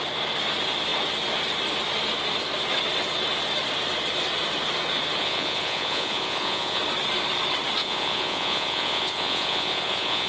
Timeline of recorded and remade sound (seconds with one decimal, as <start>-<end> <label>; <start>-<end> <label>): 0.0-5.2 recorded; 5.2-6.8 remade; 6.8-7.8 recorded; 7.8-10.3 remade